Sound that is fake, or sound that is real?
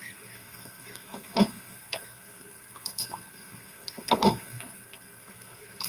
fake